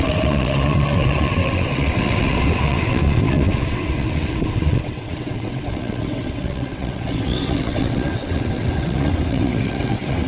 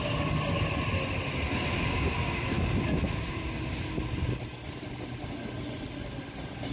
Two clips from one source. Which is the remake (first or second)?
first